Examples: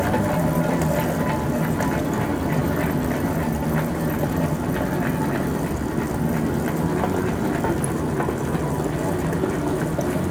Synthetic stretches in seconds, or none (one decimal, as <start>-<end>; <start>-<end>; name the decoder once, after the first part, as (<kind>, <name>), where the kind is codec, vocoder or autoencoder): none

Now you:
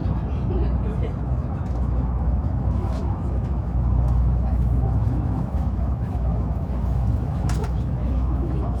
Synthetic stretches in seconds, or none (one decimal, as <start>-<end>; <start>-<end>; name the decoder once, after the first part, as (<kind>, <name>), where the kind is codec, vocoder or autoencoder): 1.2-8.8 (autoencoder, DAC-VAE)

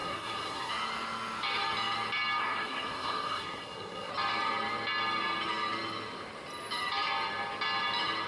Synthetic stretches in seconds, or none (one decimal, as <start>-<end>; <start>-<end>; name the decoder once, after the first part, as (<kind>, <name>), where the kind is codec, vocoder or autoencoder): 0.0-0.7 (codec, SNAC); 2.4-4.1

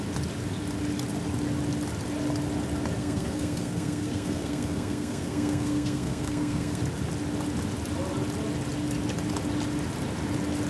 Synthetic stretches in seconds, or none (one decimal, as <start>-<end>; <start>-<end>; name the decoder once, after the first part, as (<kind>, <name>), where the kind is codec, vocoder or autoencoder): 3.0-6.8 (codec, SNAC)

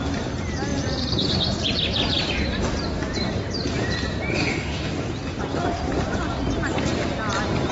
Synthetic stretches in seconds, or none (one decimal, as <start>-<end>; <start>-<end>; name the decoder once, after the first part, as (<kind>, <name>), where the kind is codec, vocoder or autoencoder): 4.3-4.9 (autoencoder, DAC-VAE)

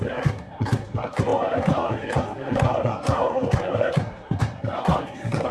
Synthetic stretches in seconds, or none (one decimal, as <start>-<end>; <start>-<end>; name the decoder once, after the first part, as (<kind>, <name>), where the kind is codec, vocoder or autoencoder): 0.0-5.5 (codec, SNAC)